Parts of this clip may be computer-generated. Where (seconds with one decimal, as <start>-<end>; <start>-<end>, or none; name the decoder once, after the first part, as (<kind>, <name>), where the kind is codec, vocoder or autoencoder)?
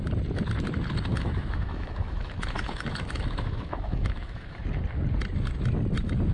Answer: 1.1-4.6 (autoencoder, DAC-VAE)